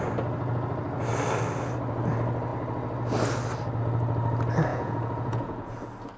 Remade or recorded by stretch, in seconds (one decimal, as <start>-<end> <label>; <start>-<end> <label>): 0.0-4.7 recorded; 4.7-5.7 remade; 5.7-6.2 recorded